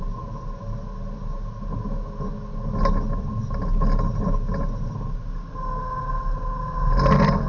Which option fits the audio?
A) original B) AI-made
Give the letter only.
A